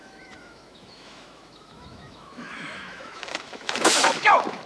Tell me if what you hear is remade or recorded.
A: remade